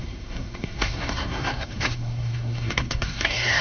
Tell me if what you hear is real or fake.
fake